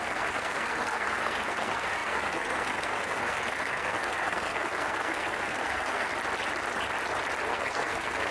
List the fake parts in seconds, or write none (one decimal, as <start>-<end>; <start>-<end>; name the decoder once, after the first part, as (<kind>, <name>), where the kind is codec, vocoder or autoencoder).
0.0-6.1 (codec, SNAC); 7.5-8.3